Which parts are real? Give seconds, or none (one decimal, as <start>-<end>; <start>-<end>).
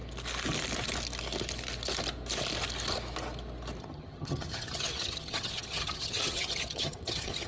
0.0-3.8